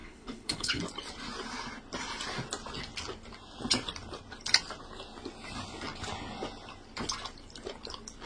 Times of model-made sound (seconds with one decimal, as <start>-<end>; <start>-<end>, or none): 0.0-0.8